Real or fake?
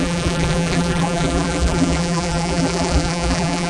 fake